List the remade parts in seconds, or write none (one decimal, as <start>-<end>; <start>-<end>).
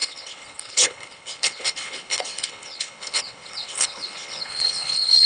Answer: 0.0-5.3